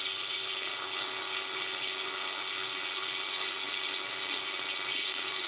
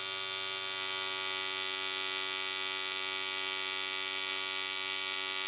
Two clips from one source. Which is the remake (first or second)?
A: first